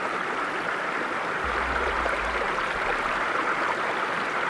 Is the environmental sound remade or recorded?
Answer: recorded